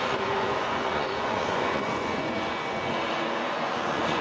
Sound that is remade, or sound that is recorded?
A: remade